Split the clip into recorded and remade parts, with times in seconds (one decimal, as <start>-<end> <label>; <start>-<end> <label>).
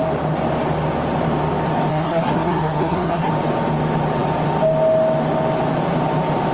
0.0-1.9 recorded; 1.9-3.3 remade; 3.3-6.5 recorded